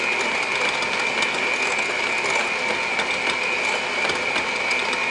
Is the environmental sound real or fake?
real